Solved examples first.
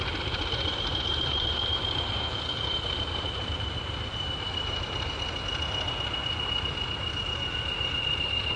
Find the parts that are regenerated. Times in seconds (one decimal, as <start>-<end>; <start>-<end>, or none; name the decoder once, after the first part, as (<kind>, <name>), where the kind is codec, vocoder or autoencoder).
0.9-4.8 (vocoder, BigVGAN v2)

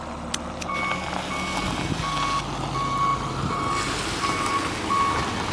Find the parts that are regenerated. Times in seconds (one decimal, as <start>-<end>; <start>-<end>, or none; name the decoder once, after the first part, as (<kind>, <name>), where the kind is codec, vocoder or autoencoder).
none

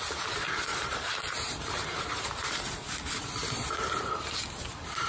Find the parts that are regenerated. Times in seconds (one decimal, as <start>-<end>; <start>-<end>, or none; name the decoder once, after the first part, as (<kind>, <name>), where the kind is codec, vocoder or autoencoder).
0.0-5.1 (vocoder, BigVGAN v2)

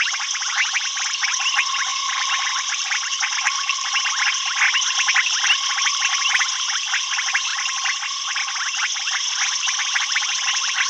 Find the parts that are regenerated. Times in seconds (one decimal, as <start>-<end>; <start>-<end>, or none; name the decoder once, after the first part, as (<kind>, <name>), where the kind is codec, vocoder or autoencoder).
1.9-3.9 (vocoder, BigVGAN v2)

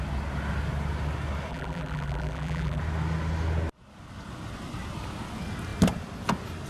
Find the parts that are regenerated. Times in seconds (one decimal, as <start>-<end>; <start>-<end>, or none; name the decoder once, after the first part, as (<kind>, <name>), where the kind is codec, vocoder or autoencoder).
1.5-2.8 (vocoder, BigVGAN v2)

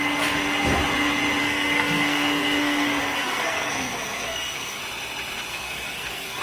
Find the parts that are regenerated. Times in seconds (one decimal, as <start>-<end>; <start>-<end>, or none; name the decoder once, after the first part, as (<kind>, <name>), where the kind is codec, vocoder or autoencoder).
1.4-4.8 (codec, SNAC); 5.5-6.4